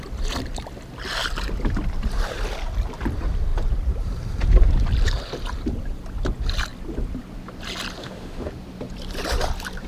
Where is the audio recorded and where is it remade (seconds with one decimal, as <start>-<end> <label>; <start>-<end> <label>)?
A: 0.0-8.0 recorded; 8.0-8.5 remade; 8.5-9.9 recorded